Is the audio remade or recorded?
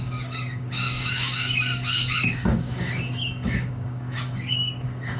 remade